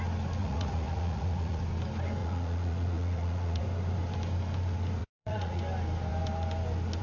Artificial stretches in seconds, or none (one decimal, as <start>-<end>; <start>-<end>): 0.4-1.6; 2.2-3.6; 5.0-5.6